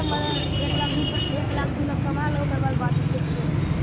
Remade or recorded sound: recorded